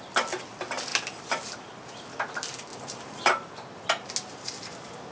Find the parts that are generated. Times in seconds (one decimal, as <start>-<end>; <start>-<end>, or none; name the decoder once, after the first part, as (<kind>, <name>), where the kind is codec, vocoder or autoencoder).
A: 2.7-3.3 (vocoder, BigVGAN v2)